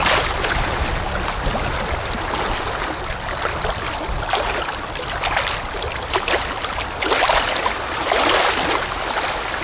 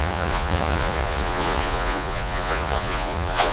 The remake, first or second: second